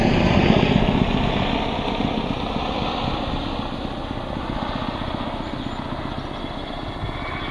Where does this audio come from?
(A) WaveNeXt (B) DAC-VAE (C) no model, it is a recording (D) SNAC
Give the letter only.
C